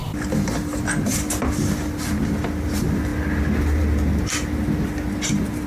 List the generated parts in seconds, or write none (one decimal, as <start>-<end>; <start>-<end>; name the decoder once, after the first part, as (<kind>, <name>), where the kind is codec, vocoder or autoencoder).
none